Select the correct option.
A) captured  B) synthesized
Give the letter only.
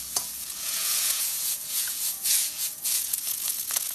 B